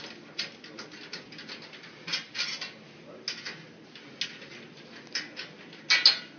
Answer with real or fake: real